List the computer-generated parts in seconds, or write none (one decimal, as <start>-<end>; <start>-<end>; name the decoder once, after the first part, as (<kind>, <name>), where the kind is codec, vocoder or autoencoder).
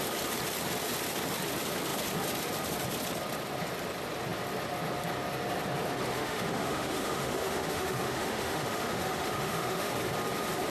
6.1-9.9 (autoencoder, DAC-VAE)